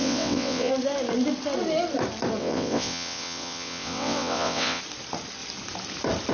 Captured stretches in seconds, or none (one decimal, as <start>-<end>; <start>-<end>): 0.7-2.4; 4.8-6.3